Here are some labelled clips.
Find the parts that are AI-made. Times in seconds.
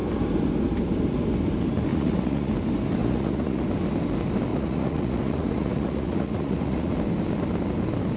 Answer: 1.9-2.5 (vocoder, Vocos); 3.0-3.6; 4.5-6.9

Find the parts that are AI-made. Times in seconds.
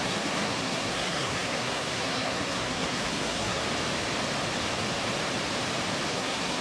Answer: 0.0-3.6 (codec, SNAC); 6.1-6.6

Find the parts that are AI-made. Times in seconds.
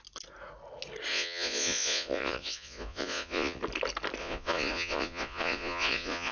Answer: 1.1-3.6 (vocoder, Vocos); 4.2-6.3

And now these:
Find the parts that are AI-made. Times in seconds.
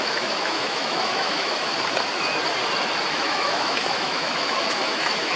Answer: 0.0-1.7 (autoencoder, DAC-VAE); 3.1-5.4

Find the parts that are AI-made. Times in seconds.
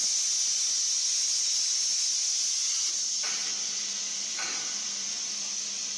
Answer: none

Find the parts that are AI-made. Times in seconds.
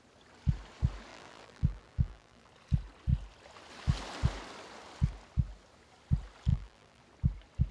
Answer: 1.1-2.5 (vocoder, BigVGAN v2); 6.5-7.0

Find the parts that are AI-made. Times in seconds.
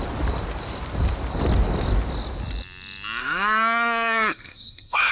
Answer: 3.2-5.1 (codec, SNAC)